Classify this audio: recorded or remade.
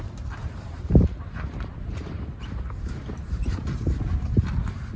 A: remade